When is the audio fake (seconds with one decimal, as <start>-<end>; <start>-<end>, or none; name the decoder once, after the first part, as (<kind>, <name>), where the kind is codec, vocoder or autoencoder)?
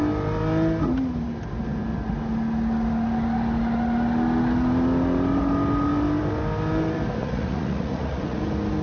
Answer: 7.2-8.4 (vocoder, Vocos)